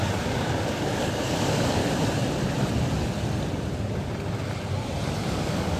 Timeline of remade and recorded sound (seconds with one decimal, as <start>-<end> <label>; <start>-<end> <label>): 0.0-1.8 remade; 1.8-5.3 recorded; 5.3-5.8 remade